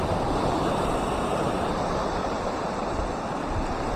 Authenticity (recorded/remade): recorded